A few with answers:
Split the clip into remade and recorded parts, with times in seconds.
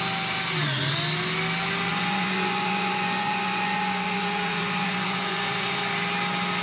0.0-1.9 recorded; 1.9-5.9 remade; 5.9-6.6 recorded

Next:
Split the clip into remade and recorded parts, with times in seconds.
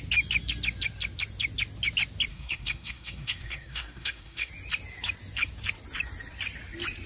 0.0-2.3 recorded; 2.3-4.5 remade; 4.5-7.1 recorded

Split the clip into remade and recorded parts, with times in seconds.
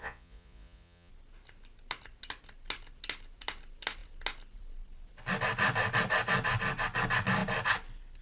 0.0-1.1 remade; 1.1-8.2 recorded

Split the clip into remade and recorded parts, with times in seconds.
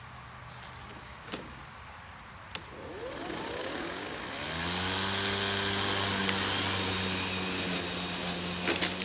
0.0-0.9 recorded; 0.9-1.6 remade; 1.6-3.6 recorded; 3.6-4.2 remade; 4.2-9.0 recorded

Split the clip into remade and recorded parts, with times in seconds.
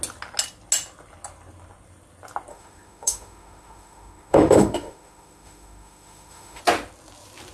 0.0-2.5 recorded; 2.5-6.6 remade; 6.6-7.5 recorded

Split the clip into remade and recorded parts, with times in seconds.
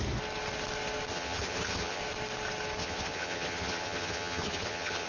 0.0-1.1 recorded; 1.1-2.0 remade; 2.0-2.8 recorded; 2.8-5.1 remade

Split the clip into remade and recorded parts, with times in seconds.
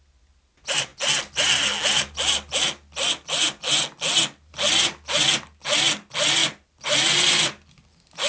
0.0-8.3 recorded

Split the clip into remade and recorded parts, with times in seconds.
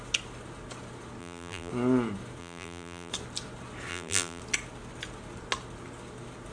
0.0-1.2 recorded; 1.2-1.7 remade; 1.7-2.4 recorded; 2.4-3.1 remade; 3.1-3.9 recorded; 3.9-4.4 remade; 4.4-6.5 recorded